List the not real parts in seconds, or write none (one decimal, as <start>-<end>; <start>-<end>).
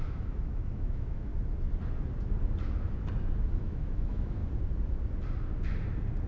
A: 0.0-1.3; 3.5-4.4